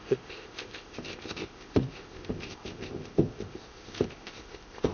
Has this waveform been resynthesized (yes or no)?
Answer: yes